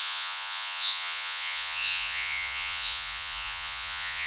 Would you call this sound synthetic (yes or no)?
yes